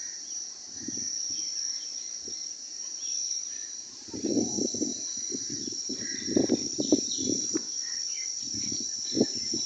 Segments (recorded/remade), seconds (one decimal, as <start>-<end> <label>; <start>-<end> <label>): 0.0-9.7 remade